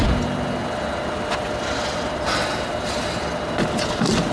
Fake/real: real